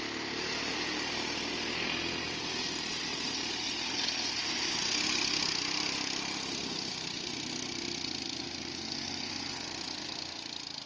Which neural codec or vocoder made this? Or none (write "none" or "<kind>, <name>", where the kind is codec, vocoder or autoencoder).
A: none